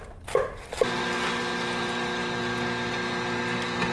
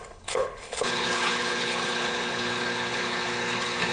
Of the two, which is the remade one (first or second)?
second